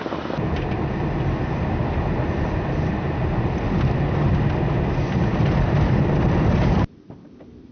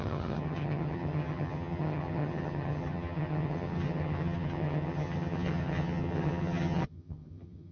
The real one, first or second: first